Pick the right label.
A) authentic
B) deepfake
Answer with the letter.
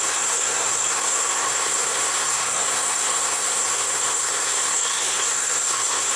B